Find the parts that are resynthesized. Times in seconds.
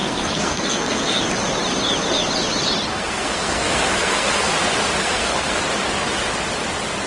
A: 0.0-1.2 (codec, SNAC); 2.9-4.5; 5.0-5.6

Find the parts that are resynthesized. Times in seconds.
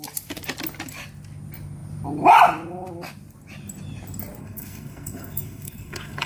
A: 4.4-6.3 (codec, SNAC)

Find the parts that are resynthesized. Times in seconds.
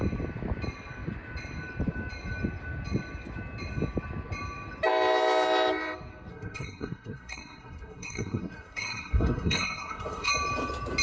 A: 6.3-10.3 (codec, SNAC)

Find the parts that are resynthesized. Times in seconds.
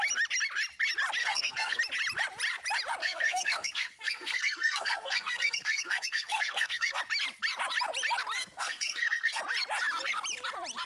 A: 1.2-1.8 (codec, SNAC); 3.0-7.0; 8.4-9.4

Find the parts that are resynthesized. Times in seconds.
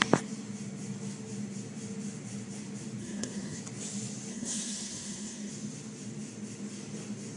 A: 3.0-3.6 (codec, SNAC); 4.3-5.5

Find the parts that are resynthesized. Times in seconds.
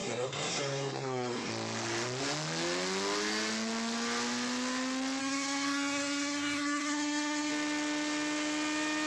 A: 0.0-1.5 (codec, SNAC); 5.2-7.5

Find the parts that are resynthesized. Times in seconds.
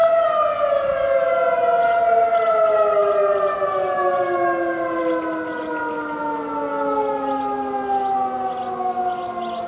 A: none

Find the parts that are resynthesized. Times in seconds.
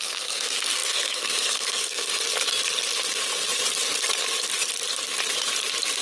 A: 0.0-2.1 (codec, SNAC)